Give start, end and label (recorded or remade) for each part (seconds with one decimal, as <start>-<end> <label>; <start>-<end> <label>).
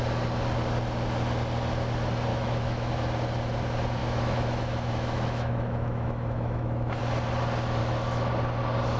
0.0-2.3 recorded; 2.3-2.9 remade; 2.9-4.0 recorded; 4.0-7.0 remade; 7.0-7.8 recorded; 7.8-8.3 remade; 8.3-9.0 recorded